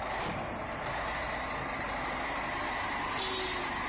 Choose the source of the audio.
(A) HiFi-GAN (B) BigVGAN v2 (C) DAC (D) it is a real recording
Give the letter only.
D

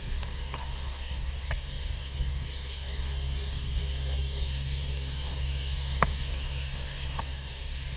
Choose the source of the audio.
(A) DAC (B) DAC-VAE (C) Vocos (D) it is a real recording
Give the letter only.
A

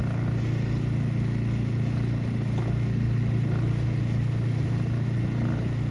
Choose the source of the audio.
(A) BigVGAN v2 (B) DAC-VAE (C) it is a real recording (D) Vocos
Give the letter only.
C